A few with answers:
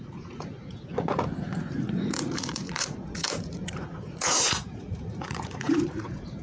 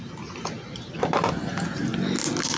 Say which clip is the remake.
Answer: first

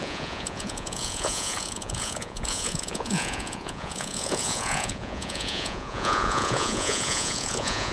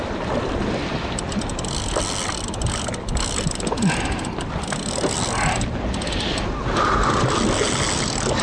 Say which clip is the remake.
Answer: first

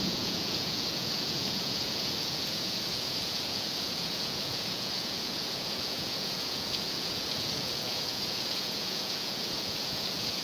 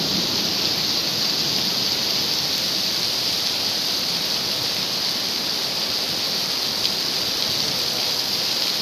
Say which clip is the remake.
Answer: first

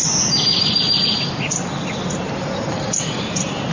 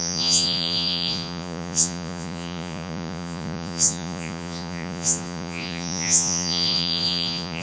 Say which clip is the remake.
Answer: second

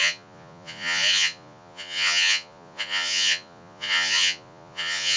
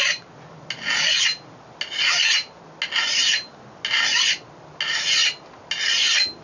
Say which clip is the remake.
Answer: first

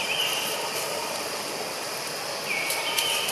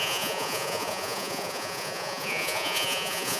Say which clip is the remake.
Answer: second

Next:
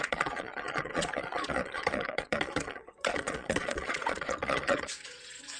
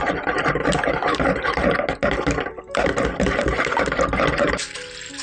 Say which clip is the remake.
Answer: first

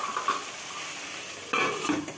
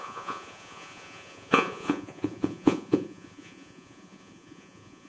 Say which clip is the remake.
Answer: second